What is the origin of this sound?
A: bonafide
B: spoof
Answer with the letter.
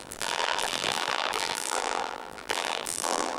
B